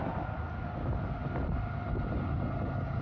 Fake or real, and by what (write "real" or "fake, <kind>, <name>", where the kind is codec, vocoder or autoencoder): real